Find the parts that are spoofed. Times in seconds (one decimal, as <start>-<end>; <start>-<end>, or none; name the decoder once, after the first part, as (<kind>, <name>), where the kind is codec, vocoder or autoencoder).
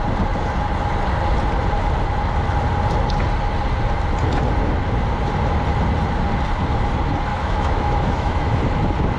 7.3-8.6 (autoencoder, DAC-VAE)